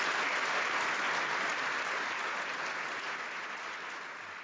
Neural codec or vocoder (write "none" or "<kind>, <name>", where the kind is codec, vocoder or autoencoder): none